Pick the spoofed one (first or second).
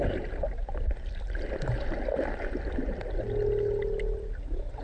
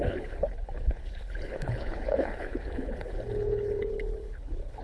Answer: second